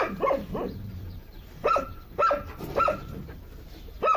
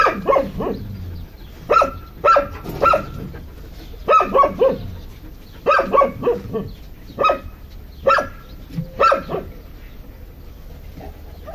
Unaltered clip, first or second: second